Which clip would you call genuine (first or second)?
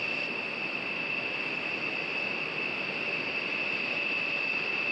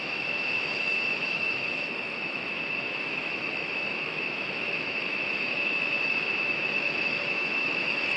first